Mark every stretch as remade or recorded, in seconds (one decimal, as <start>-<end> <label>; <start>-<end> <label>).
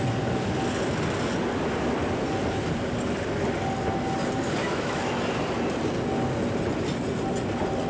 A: 0.0-4.6 recorded; 4.6-5.2 remade; 5.2-7.9 recorded